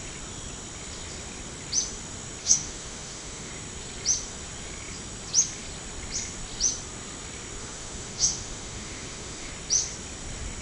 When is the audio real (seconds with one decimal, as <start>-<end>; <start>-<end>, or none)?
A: 0.0-2.4; 3.5-7.6; 9.5-10.6